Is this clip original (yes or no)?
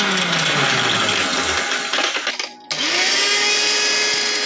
yes